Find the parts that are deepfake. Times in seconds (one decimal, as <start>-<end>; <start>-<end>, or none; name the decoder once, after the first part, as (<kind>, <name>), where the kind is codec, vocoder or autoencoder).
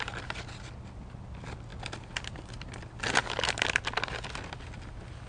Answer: none